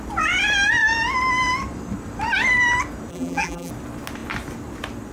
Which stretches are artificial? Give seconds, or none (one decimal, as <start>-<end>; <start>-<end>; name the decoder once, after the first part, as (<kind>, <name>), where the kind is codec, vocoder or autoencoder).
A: 3.1-3.7 (vocoder, BigVGAN v2)